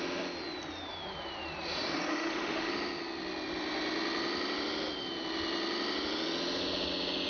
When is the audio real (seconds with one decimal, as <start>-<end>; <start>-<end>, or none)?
0.0-2.1; 2.7-7.3